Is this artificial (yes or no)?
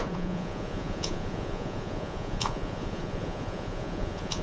yes